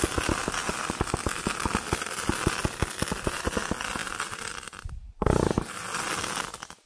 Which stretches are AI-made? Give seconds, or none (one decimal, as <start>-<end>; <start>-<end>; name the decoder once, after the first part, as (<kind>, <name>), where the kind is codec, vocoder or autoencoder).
none